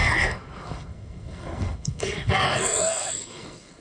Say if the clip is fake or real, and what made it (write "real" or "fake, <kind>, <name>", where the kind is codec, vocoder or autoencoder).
fake, codec, SNAC